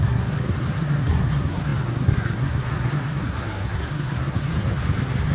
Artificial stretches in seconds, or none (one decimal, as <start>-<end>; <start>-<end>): 0.0-5.3